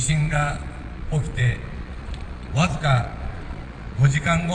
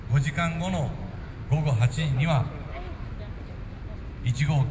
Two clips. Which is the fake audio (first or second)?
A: first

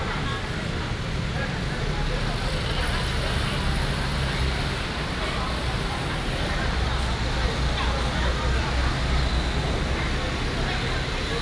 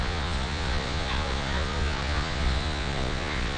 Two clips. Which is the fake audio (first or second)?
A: second